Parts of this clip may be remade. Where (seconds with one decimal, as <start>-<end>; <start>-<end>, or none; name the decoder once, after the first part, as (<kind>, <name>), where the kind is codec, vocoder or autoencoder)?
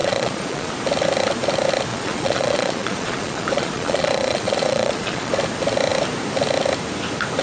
0.0-0.7 (vocoder, Vocos); 1.9-5.3